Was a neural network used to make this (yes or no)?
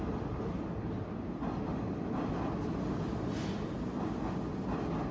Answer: no